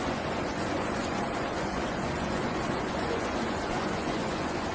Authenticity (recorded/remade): remade